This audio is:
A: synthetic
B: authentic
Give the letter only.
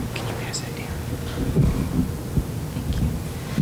B